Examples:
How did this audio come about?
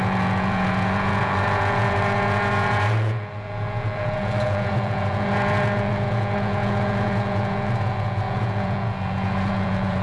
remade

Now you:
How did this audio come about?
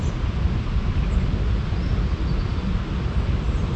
recorded